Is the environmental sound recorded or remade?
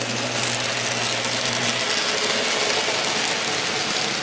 recorded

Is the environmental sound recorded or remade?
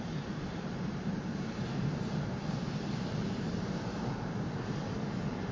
remade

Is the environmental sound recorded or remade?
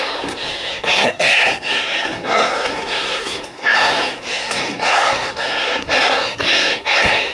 remade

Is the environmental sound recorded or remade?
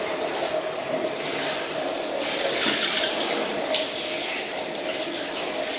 recorded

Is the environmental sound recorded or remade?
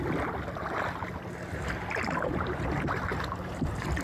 recorded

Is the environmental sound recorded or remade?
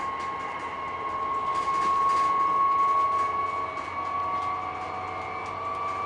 recorded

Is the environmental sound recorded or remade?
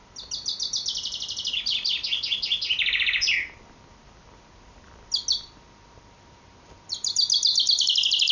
recorded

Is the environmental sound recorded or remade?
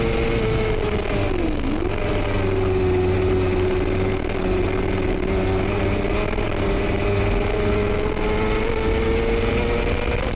recorded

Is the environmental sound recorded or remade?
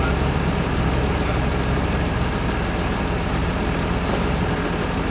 recorded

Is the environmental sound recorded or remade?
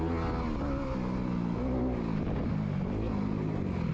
recorded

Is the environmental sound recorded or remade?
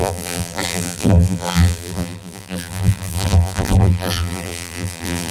remade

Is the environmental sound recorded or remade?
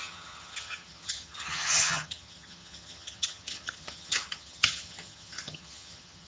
remade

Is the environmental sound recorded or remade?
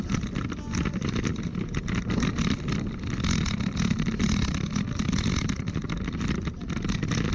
recorded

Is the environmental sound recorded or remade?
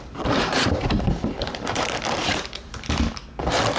remade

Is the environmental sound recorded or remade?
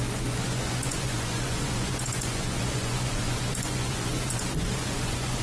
remade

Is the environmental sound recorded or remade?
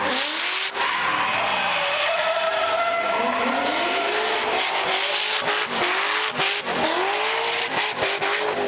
recorded